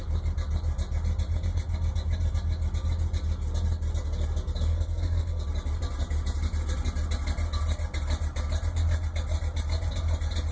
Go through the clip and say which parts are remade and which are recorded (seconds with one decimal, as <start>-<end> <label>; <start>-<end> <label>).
0.0-4.7 recorded; 4.7-5.4 remade; 5.4-10.5 recorded